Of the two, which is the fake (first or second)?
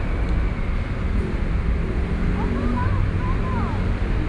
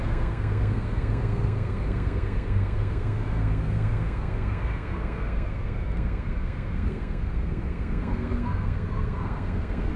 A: second